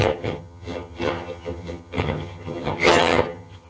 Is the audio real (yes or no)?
no